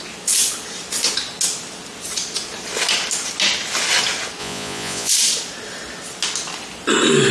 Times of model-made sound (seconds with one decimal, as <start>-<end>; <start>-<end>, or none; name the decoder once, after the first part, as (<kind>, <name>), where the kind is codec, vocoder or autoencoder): 4.4-5.1 (vocoder, Vocos)